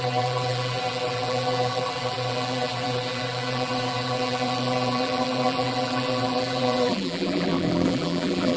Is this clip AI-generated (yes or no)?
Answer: yes